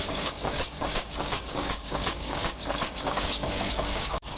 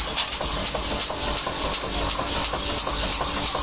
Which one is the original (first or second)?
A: second